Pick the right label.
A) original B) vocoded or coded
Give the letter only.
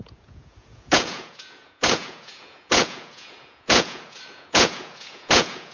B